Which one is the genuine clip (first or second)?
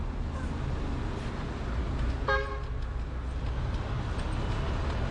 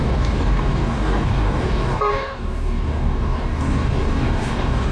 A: first